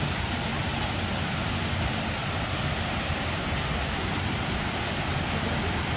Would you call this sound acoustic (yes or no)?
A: yes